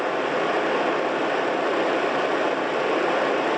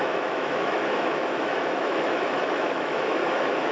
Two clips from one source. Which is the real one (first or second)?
first